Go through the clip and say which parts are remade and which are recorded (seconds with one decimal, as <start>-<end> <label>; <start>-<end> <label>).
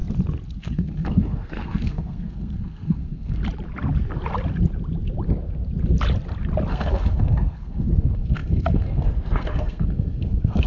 0.0-0.6 recorded; 0.6-3.4 remade; 3.4-6.7 recorded; 6.7-10.7 remade